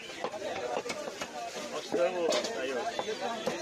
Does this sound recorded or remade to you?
recorded